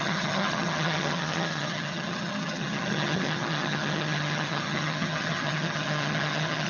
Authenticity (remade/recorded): remade